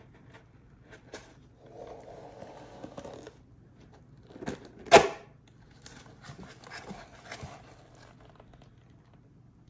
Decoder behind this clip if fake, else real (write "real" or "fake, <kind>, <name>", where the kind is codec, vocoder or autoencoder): real